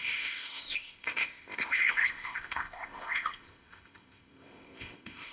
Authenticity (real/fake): fake